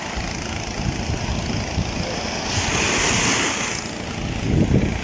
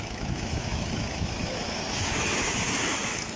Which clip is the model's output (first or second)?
second